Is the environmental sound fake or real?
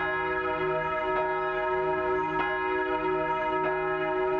real